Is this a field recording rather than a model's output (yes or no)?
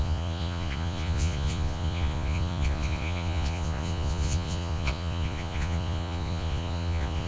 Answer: no